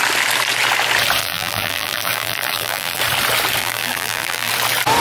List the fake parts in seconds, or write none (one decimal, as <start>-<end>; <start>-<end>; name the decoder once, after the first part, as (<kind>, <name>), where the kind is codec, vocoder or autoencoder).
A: 1.2-3.0 (vocoder, BigVGAN v2); 3.6-4.5